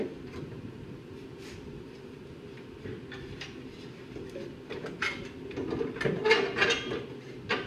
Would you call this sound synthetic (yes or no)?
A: no